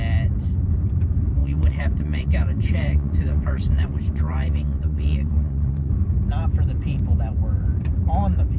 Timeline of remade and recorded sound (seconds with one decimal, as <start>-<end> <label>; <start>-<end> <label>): 0.0-1.4 recorded; 1.4-5.9 remade; 5.9-8.6 recorded